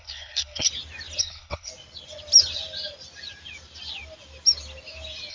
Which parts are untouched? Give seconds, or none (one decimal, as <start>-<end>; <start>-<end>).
0.7-1.2; 1.7-5.3